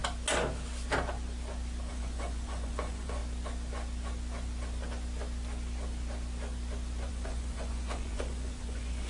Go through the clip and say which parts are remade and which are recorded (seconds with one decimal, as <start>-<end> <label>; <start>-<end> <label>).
0.0-1.9 recorded; 1.9-3.2 remade; 3.2-7.1 recorded; 7.1-9.1 remade